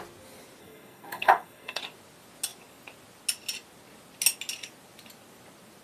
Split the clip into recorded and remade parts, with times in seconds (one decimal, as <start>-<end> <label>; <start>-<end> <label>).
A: 0.0-0.6 recorded; 0.6-1.8 remade; 1.8-5.8 recorded